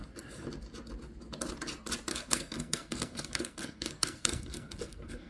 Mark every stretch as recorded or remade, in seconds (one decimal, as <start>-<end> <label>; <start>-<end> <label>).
0.0-2.1 recorded; 2.1-5.3 remade